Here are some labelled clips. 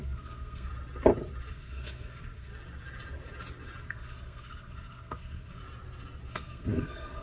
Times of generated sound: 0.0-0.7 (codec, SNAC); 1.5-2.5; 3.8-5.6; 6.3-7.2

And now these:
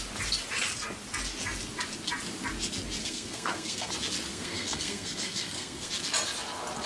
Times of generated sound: 3.0-3.9 (codec, SNAC); 4.3-5.9

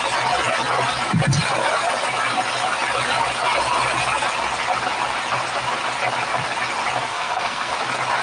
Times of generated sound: 7.1-7.7 (codec, SNAC)